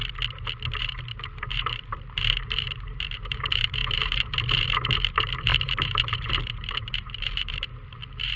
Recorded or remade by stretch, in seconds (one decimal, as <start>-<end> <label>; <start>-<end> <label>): 0.0-0.8 recorded; 0.8-8.4 remade